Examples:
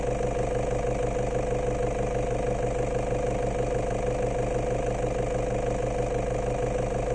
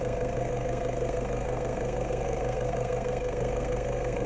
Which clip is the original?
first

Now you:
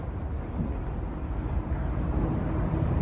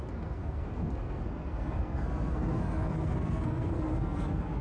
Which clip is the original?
first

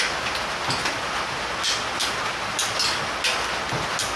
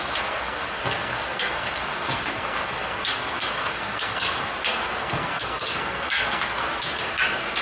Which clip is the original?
first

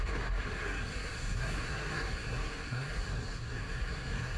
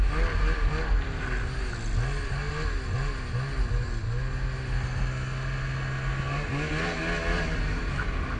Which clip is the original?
second